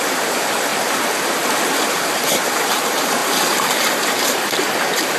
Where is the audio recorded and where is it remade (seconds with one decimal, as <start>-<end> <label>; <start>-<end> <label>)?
0.0-0.7 remade; 0.7-1.9 recorded; 1.9-5.2 remade